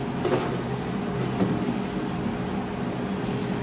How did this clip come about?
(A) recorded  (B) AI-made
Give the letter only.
A